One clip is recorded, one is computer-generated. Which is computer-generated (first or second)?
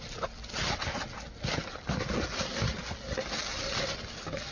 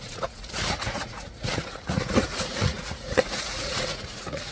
second